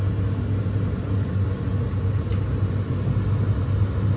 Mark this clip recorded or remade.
recorded